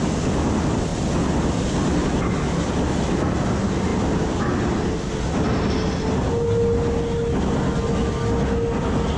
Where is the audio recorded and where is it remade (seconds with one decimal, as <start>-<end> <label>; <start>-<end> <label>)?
0.0-9.2 recorded